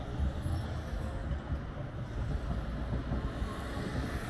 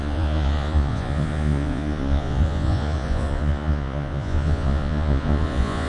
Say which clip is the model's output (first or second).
second